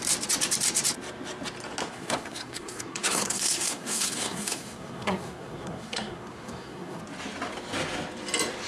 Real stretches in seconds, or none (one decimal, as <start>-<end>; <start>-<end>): 0.0-1.8; 7.0-8.7